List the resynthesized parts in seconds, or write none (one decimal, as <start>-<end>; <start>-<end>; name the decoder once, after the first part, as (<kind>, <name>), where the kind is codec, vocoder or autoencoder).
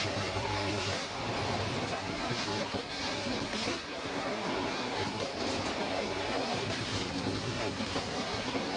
0.0-1.1 (codec, SNAC); 1.8-5.3; 5.8-8.8